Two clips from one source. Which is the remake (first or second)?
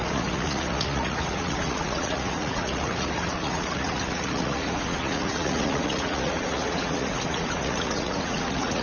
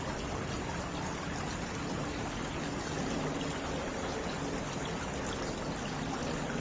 first